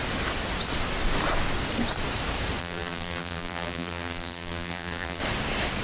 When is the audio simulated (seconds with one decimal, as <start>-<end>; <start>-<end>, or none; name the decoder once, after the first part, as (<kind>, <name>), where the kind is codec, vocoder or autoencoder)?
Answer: 2.6-5.2 (vocoder, BigVGAN v2)

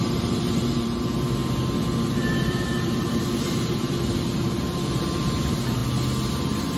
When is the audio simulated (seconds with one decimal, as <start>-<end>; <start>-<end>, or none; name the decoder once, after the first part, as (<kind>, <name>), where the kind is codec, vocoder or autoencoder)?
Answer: 0.0-1.4 (vocoder, BigVGAN v2); 2.4-5.8; 6.3-6.8